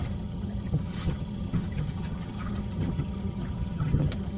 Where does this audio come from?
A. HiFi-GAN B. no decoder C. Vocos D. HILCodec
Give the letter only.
A